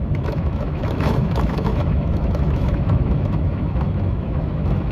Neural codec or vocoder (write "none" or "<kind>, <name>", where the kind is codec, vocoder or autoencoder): autoencoder, DAC-VAE